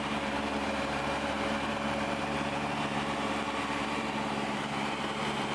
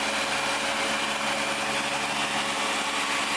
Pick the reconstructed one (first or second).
first